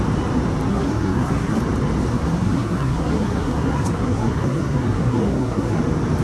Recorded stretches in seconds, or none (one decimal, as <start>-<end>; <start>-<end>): 0.0-0.7; 1.6-2.1; 5.8-6.2